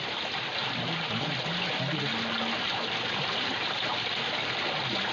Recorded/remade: recorded